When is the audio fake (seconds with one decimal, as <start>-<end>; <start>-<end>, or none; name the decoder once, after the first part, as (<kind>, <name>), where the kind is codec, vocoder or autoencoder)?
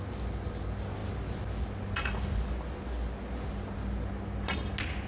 none